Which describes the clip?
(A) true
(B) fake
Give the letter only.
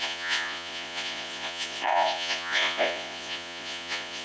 B